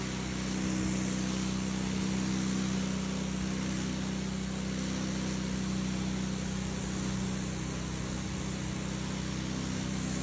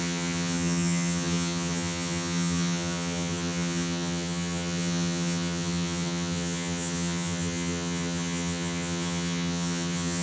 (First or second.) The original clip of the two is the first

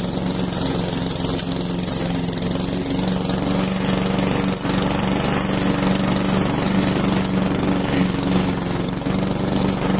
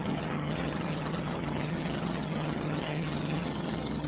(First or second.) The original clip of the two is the first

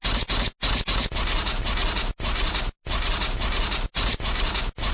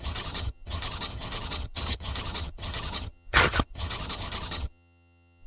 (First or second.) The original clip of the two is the first